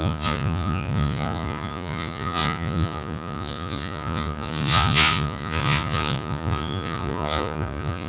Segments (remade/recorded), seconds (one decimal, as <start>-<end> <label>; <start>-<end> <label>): 0.0-8.1 remade